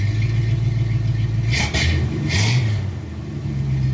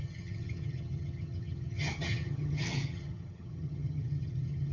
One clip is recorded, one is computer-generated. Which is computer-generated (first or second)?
second